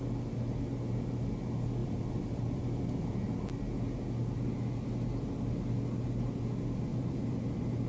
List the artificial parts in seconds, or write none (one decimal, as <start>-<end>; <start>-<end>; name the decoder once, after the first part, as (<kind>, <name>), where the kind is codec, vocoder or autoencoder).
1.8-3.6 (vocoder, BigVGAN v2); 6.9-7.5